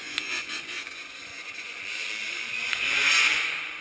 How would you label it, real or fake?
fake